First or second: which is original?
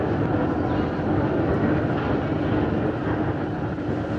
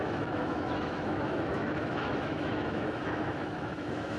first